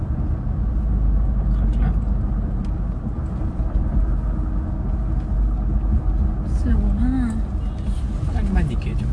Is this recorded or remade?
recorded